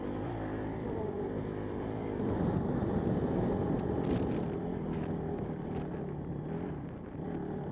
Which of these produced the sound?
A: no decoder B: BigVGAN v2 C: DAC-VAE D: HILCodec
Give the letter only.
B